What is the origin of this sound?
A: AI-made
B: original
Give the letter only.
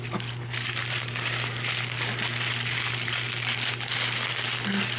A